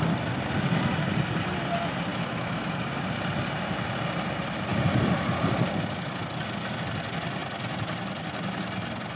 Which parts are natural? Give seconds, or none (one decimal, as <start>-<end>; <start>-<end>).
0.0-2.1; 2.7-9.2